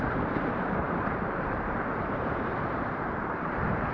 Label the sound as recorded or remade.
remade